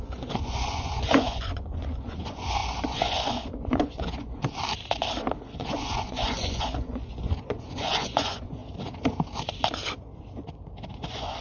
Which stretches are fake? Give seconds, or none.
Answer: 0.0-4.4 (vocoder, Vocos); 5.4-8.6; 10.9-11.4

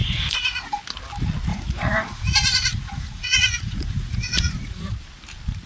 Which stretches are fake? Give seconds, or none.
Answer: 0.0-0.8 (vocoder, Vocos); 1.5-4.9

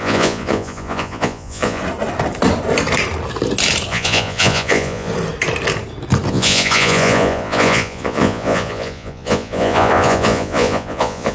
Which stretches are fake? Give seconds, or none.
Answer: 0.0-1.8 (vocoder, Vocos); 3.9-5.1; 6.3-11.3

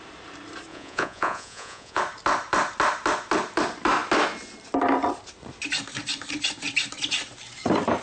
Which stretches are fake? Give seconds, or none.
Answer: 0.7-2.0 (vocoder, Vocos)

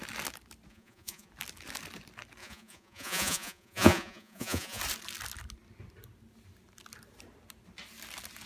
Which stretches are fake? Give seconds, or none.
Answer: 0.7-1.3 (vocoder, Vocos); 2.4-4.8

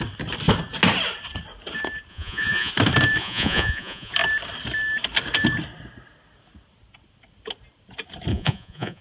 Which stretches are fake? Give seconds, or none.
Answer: 2.1-2.7 (vocoder, Vocos); 3.2-4.1; 8.3-9.0